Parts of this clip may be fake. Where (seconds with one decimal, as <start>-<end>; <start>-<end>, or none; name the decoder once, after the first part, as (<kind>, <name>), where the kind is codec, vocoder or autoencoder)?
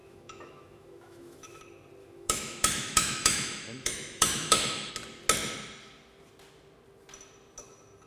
0.0-1.6 (autoencoder, DAC-VAE); 2.0-4.9